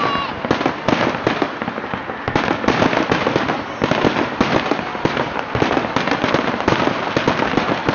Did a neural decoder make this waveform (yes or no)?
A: no